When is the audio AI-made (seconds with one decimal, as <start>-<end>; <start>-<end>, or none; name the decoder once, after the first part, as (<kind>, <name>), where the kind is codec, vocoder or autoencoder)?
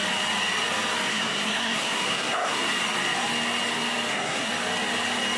1.1-2.6 (codec, SNAC); 4.1-4.5